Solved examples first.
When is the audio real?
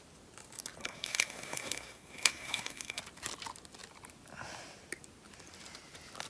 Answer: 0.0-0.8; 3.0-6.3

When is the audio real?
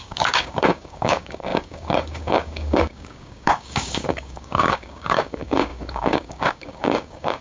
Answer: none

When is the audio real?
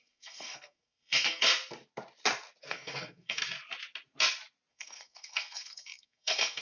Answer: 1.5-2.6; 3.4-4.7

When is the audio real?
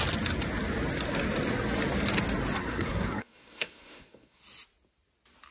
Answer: 0.0-2.6; 4.4-5.5